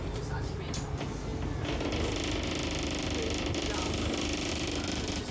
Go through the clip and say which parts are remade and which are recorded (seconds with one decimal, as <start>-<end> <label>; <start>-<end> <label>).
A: 0.0-5.3 recorded